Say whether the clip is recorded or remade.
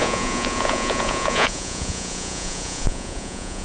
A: remade